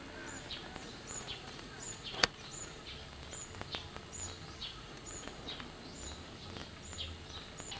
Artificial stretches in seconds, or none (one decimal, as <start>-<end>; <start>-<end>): 0.8-2.8; 4.6-5.3